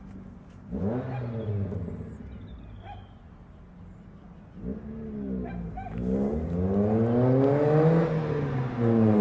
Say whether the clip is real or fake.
real